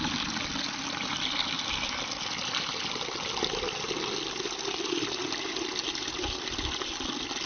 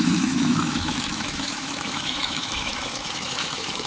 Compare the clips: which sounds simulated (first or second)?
second